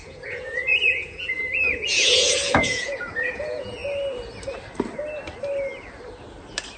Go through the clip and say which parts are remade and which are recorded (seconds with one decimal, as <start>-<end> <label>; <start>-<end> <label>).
0.0-3.8 remade; 3.8-6.8 recorded